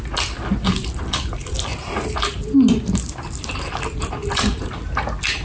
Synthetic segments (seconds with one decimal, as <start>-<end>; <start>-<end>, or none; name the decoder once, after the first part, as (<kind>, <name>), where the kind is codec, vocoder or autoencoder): none